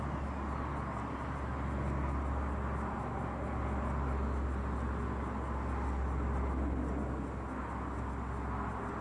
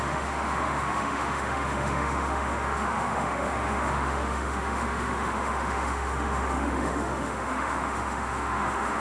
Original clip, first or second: first